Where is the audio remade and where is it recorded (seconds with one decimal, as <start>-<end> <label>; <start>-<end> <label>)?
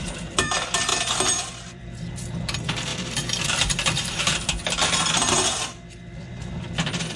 0.0-0.9 remade; 0.9-1.4 recorded; 1.4-7.2 remade